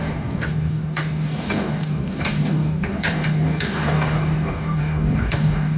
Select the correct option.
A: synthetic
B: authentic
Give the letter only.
A